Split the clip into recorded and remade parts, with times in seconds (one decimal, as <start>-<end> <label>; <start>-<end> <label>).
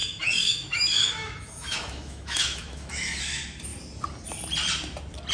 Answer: 0.0-3.2 remade; 3.2-5.3 recorded